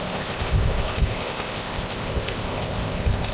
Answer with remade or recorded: remade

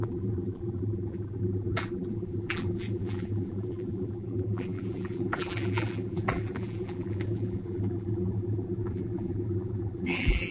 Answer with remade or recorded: remade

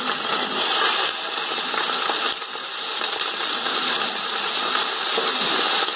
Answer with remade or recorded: recorded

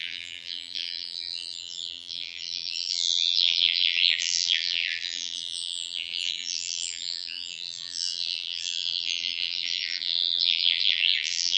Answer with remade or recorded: remade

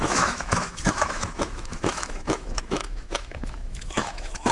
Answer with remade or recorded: remade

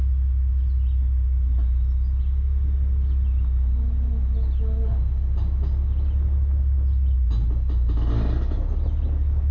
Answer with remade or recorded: recorded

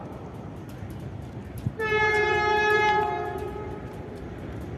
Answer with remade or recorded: remade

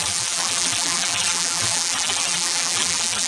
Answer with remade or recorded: remade